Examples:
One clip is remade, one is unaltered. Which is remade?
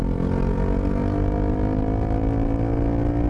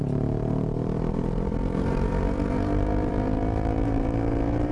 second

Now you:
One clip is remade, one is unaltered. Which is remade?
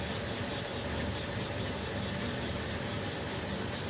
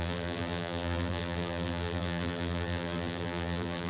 second